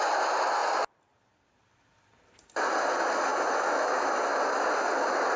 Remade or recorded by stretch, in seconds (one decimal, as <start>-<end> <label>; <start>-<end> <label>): 0.0-0.6 remade; 0.6-1.9 recorded; 1.9-3.3 remade; 3.3-4.4 recorded; 4.4-5.4 remade